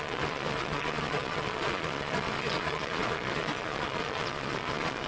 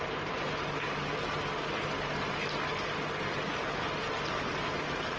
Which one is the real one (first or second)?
second